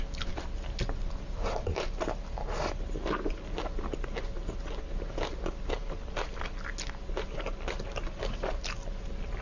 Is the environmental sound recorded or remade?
recorded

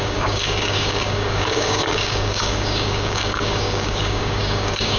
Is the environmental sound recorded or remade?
remade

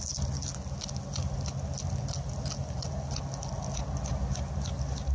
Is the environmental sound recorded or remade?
recorded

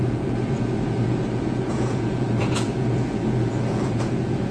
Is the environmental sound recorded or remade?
remade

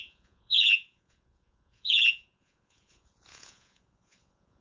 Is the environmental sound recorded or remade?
remade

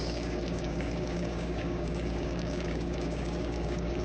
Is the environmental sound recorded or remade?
remade